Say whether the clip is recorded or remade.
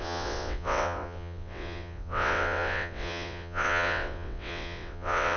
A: remade